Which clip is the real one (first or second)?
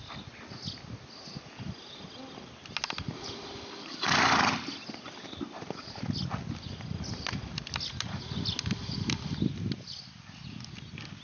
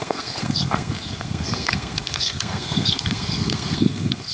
first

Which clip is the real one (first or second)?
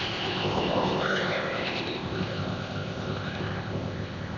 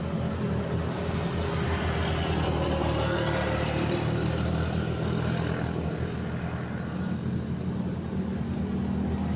second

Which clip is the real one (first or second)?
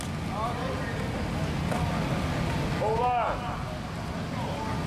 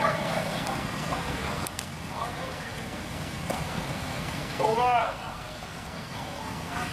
first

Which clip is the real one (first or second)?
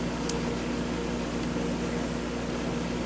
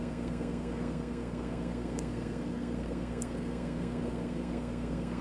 first